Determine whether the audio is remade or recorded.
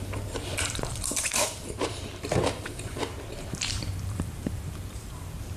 remade